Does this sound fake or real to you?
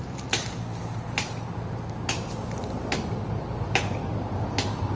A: real